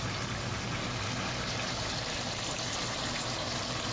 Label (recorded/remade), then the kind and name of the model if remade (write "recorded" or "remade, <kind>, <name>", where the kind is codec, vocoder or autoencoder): recorded